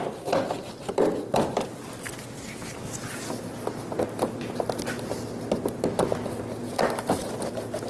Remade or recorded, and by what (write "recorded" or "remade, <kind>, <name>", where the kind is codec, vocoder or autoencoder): recorded